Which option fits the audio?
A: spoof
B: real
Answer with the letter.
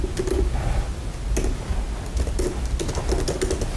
B